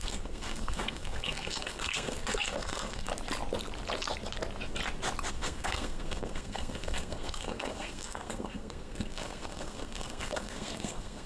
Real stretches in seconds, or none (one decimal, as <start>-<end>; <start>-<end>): 3.1-5.3